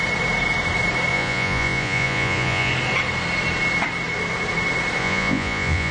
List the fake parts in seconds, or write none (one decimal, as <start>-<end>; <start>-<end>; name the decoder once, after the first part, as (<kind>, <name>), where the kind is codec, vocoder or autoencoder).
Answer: 1.1-2.7 (vocoder, Vocos); 5.0-5.9